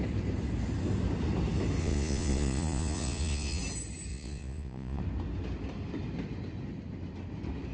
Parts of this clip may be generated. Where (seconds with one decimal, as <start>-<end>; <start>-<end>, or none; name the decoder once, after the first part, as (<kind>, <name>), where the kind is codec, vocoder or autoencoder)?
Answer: 1.8-3.6 (vocoder, Vocos); 4.1-5.0